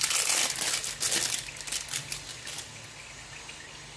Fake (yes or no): no